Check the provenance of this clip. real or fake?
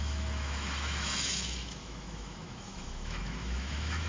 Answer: fake